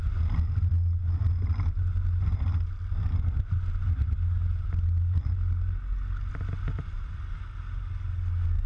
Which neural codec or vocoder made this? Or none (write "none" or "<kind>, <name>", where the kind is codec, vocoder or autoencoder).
none